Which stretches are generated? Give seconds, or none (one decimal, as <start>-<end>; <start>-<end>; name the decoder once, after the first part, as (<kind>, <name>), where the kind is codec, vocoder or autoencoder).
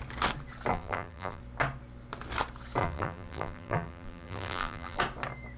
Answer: 0.7-1.4 (vocoder, BigVGAN v2); 2.8-5.0